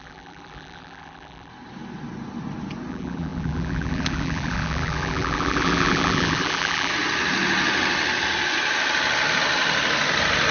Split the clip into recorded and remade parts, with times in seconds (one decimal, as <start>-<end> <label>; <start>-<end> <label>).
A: 0.0-1.5 remade; 1.5-2.9 recorded; 2.9-6.9 remade; 6.9-10.5 recorded